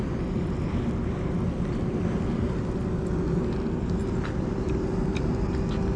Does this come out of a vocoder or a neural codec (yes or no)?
no